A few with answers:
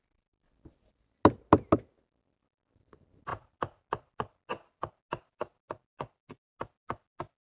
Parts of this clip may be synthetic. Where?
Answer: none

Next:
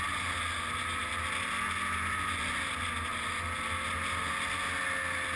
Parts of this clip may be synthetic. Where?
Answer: none

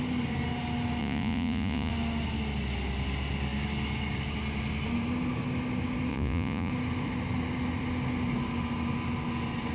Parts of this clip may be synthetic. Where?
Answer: 1.0-1.9 (vocoder, Vocos); 6.1-6.7

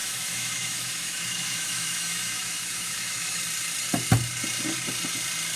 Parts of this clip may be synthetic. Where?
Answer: 0.0-3.4 (autoencoder, DAC-VAE)